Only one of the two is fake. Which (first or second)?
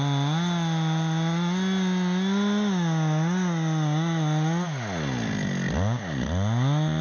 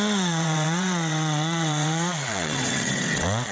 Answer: second